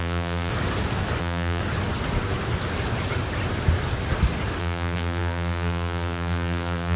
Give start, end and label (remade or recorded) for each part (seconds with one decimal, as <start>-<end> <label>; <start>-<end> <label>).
0.0-0.5 remade; 0.5-1.2 recorded; 1.2-1.6 remade; 1.6-4.6 recorded; 4.6-7.0 remade